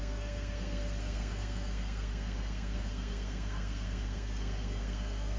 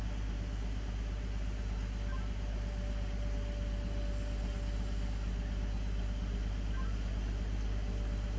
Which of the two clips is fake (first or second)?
first